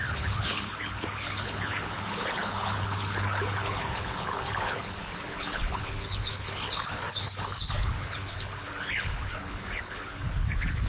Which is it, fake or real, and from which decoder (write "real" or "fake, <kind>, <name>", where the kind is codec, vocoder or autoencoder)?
fake, codec, HILCodec